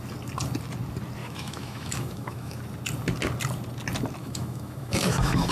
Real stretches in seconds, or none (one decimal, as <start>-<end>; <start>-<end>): 0.0-1.2; 2.6-4.2